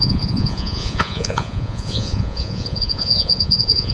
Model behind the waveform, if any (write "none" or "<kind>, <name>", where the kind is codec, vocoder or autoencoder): vocoder, Vocos